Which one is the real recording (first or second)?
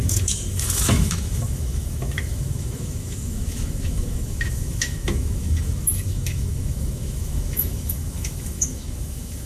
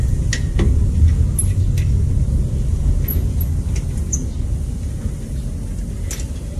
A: second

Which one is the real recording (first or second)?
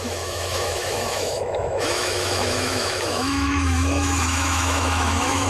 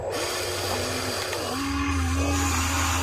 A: second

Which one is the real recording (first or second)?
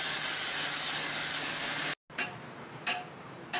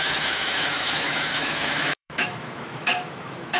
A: first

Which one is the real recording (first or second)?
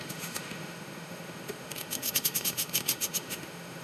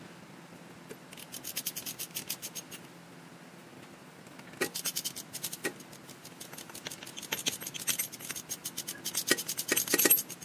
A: second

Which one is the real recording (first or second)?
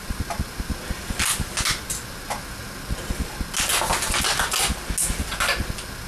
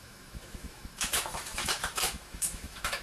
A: first